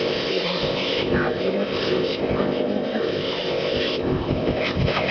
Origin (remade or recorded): remade